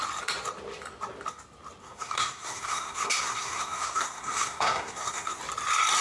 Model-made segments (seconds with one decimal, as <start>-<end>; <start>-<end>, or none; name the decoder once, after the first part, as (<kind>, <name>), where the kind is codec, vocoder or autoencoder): 1.8-5.4 (codec, SNAC)